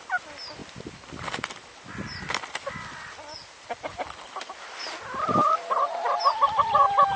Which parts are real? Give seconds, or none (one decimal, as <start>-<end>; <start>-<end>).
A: 0.0-5.4; 6.2-7.2